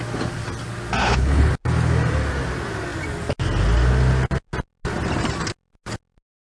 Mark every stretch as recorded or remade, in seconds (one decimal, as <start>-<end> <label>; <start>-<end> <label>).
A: 0.0-1.0 recorded; 1.0-1.5 remade; 1.5-6.5 recorded